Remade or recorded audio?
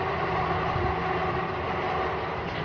recorded